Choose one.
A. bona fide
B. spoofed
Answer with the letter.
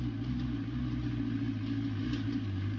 A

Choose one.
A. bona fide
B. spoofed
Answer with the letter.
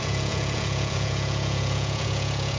B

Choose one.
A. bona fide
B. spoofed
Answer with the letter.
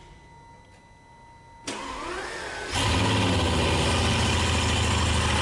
A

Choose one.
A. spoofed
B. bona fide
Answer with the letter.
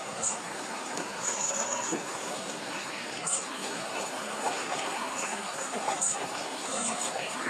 A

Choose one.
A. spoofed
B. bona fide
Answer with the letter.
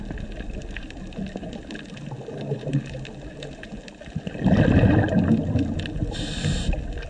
B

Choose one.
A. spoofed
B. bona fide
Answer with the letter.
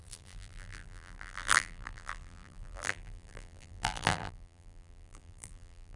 A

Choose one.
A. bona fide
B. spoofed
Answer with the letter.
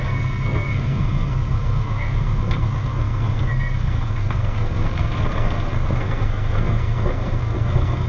B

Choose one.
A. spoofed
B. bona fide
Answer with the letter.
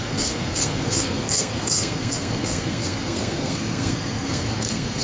A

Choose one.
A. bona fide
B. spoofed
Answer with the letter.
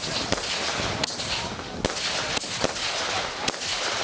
A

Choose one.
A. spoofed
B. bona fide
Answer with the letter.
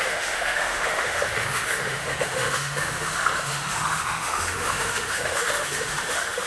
A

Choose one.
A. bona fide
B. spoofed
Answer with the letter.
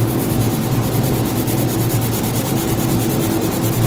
A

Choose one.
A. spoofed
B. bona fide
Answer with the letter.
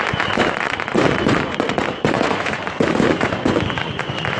A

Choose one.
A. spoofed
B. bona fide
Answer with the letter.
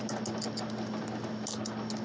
B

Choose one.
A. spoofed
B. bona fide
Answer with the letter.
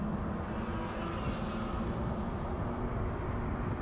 B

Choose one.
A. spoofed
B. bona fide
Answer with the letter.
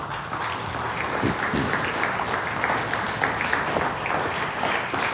B